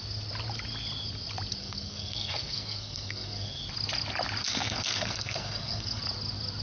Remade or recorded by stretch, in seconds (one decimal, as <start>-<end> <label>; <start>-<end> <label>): 0.0-1.6 recorded; 1.6-3.6 remade; 3.6-4.4 recorded; 4.4-6.0 remade; 6.0-6.6 recorded